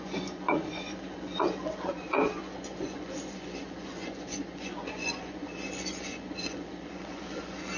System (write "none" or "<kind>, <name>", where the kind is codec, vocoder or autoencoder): vocoder, Vocos